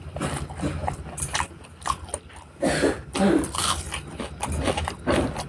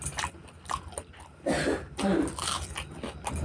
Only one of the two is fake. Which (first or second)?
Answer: first